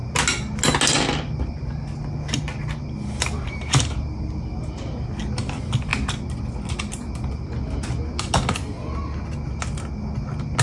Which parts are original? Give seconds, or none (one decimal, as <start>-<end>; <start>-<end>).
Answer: 0.0-10.6